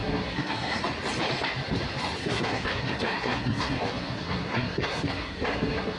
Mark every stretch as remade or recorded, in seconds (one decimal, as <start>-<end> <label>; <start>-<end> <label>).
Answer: 0.0-0.8 remade; 0.8-2.2 recorded; 2.2-6.0 remade